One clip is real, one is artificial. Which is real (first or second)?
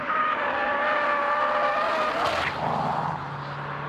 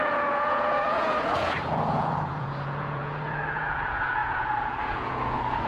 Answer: first